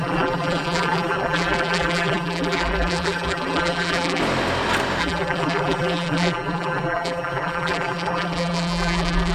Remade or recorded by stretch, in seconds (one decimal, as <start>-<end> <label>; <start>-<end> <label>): 0.0-4.2 remade; 4.2-5.0 recorded; 5.0-9.3 remade